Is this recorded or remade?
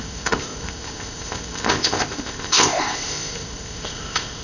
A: remade